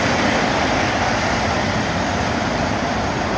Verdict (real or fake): real